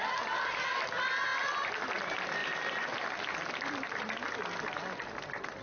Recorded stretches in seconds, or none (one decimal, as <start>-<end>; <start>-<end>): 0.0-5.6